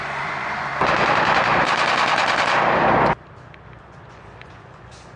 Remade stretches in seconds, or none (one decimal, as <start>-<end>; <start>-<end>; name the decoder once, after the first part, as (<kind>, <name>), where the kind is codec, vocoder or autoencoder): 0.0-0.7 (vocoder, Vocos); 3.8-5.2